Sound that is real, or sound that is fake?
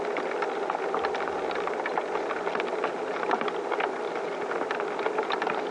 real